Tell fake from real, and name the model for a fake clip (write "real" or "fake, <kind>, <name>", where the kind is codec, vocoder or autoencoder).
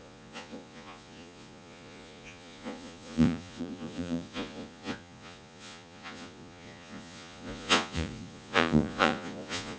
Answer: fake, vocoder, Vocos